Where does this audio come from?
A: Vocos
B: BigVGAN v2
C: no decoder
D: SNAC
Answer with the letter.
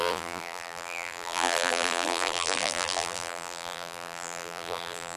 B